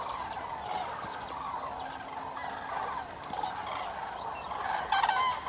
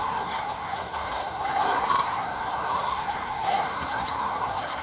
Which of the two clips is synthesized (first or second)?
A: second